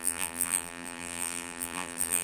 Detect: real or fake fake